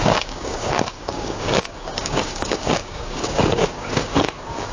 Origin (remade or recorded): remade